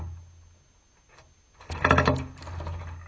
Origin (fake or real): real